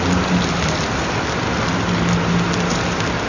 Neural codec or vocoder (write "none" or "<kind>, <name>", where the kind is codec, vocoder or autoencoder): none